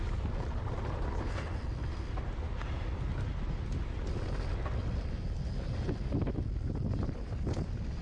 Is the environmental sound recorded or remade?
recorded